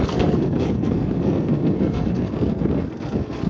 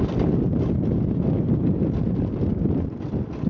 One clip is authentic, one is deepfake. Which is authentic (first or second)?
second